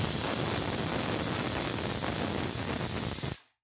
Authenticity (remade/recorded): recorded